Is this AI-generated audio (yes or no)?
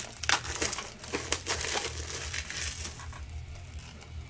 no